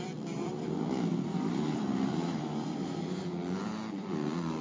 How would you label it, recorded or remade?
remade